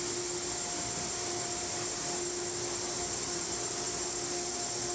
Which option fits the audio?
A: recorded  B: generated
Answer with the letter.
A